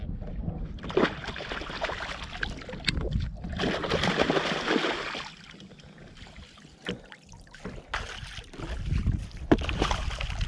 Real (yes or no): yes